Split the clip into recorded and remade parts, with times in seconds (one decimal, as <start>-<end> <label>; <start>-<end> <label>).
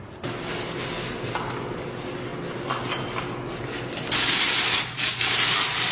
0.0-5.9 recorded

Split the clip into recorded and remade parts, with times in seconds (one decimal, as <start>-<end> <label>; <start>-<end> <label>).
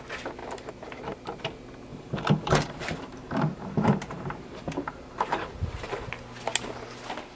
0.0-0.4 recorded; 0.4-1.0 remade; 1.0-1.9 recorded; 1.9-6.1 remade; 6.1-7.4 recorded